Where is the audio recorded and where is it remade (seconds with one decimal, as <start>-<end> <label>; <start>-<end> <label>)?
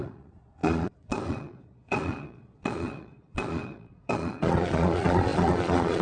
0.0-6.0 remade